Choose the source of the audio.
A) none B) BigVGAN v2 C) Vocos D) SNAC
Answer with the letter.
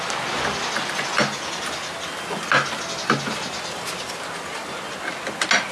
A